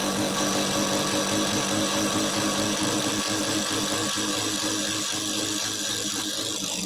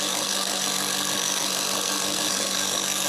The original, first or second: first